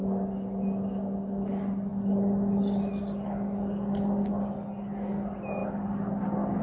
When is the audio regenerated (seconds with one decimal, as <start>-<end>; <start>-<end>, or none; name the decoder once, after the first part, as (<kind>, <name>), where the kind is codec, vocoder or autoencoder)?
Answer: none